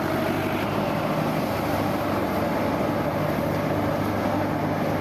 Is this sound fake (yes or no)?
no